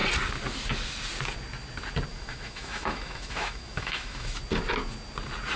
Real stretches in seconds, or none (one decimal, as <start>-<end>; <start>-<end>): 0.0-2.1; 4.4-5.6